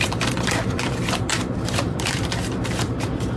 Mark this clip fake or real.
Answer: fake